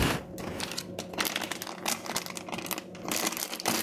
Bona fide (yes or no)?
yes